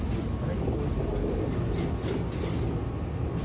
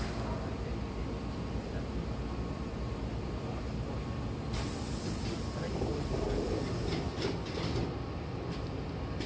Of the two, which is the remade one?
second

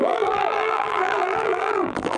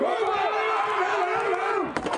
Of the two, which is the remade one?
first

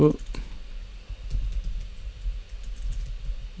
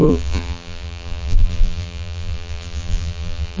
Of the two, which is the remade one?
second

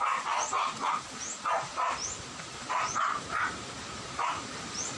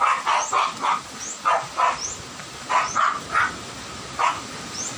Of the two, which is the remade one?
first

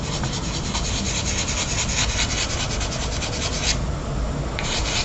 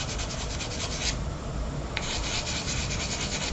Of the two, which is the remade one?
second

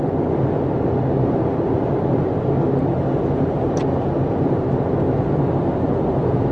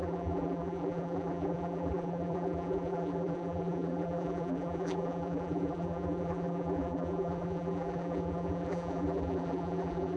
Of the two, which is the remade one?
second